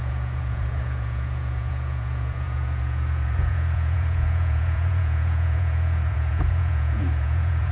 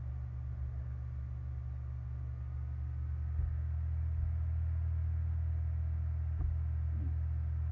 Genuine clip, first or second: second